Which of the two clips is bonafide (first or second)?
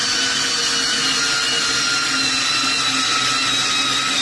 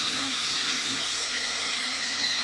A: first